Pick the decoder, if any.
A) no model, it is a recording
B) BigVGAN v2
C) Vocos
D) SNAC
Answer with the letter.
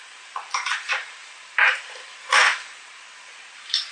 B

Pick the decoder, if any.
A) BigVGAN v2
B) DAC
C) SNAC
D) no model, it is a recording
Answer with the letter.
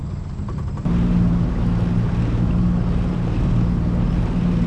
D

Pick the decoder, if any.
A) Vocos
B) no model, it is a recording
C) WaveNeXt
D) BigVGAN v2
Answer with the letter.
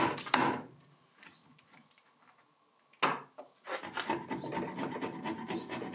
B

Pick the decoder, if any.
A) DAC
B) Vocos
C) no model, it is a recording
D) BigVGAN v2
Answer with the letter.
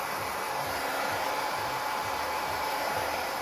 D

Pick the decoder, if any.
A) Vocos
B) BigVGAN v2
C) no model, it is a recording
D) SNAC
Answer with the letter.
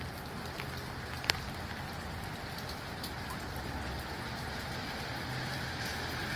B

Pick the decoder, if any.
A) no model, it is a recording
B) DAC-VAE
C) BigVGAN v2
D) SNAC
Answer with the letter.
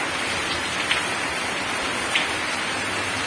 A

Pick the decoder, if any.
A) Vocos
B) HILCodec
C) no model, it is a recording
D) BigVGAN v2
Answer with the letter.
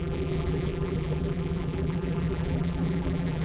D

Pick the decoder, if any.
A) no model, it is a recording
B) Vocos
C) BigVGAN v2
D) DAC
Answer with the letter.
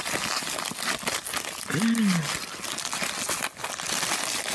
A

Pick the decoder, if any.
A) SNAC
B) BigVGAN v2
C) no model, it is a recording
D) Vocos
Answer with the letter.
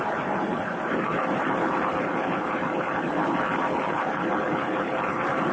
B